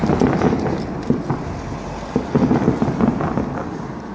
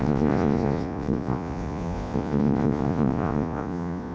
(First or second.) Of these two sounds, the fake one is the second